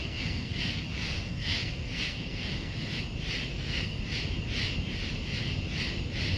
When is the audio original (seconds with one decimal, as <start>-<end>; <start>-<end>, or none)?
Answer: 2.7-3.5; 4.0-6.4